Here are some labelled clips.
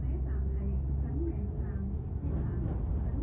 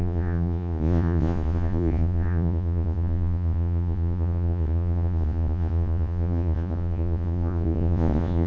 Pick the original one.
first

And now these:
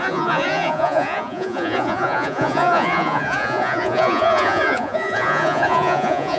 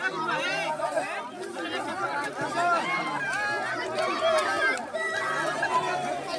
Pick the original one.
second